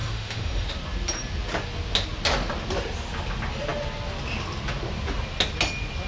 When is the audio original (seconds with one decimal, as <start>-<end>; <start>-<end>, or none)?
0.7-6.1